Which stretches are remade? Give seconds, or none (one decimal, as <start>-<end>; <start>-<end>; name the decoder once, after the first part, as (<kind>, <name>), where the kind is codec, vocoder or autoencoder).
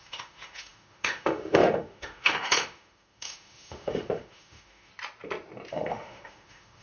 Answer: 0.0-4.9 (autoencoder, DAC-VAE); 5.7-6.8